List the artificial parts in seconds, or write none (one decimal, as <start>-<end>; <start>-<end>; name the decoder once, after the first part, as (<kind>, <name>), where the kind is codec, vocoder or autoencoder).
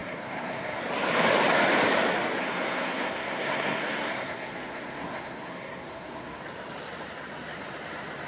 0.0-0.8 (codec, SNAC); 2.4-6.4